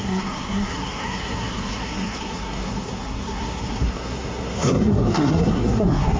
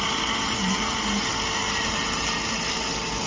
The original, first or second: second